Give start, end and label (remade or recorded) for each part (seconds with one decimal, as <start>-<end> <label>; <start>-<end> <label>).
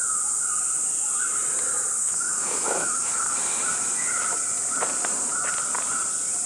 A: 0.0-2.0 recorded; 2.0-3.1 remade; 3.1-6.5 recorded